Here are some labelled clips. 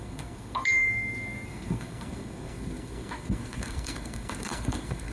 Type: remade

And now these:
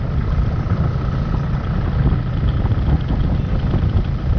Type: recorded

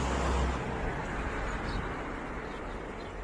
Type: recorded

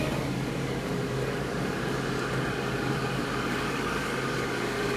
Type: remade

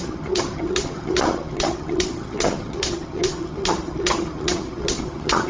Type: remade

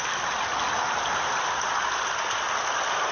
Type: recorded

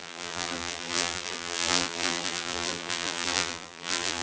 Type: remade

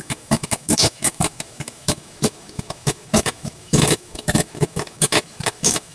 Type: remade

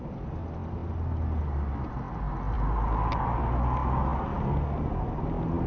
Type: recorded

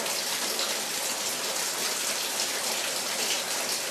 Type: remade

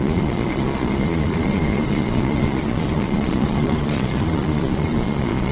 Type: remade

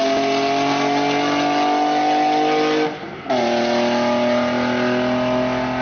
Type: recorded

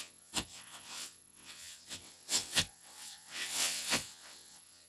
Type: remade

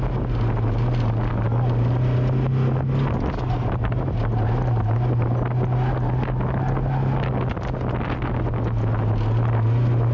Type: recorded